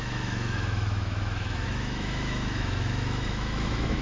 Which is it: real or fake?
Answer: fake